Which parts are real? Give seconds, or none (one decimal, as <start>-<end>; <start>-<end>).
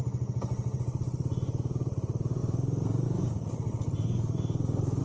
0.0-2.4; 3.2-5.0